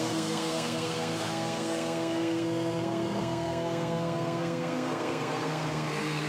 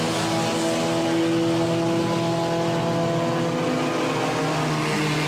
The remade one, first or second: first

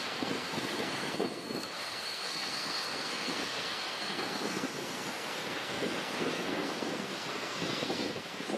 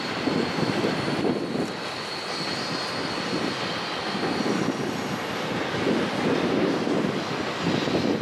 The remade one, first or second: first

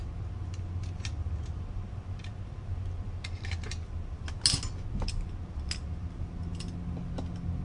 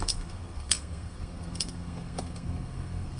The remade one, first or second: second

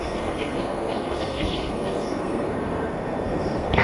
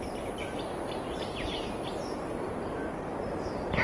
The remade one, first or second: first